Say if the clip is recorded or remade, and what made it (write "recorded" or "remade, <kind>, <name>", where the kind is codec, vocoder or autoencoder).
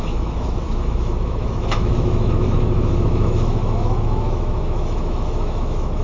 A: remade, autoencoder, DAC-VAE